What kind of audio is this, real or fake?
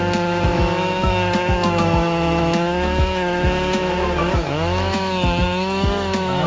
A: fake